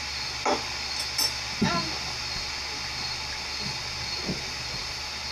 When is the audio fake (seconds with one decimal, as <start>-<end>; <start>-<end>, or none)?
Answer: none